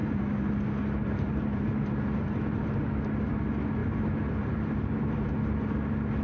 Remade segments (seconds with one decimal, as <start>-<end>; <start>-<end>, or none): 0.0-0.5; 1.0-2.4; 3.8-5.3